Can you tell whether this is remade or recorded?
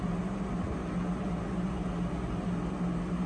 recorded